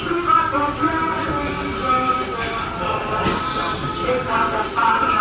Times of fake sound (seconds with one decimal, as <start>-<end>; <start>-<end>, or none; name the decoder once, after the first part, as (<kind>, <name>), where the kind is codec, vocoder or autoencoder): none